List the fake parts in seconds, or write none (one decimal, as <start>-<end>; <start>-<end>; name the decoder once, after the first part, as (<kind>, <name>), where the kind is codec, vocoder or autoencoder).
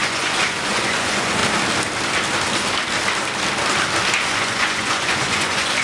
0.0-1.4 (vocoder, Vocos); 4.2-5.8